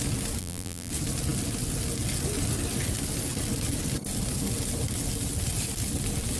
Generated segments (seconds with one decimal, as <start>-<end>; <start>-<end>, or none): 0.4-0.9